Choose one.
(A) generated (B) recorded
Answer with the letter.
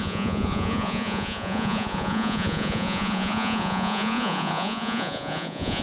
A